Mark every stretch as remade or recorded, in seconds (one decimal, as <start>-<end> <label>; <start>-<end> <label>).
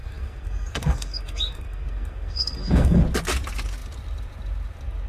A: 0.0-3.0 remade; 3.0-5.1 recorded